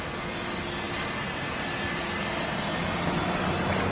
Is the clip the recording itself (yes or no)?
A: yes